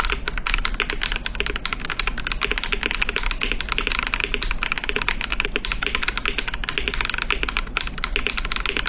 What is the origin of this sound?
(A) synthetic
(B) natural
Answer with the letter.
B